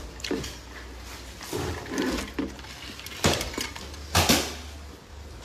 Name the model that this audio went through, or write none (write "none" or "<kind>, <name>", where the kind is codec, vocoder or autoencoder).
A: none